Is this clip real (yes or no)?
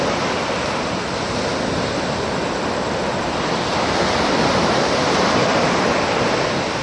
yes